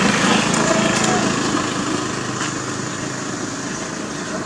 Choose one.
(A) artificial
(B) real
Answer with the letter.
B